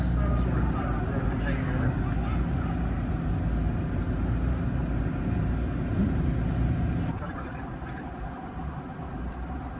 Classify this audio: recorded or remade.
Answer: recorded